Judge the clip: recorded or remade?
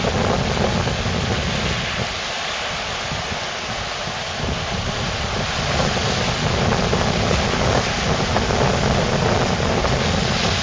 recorded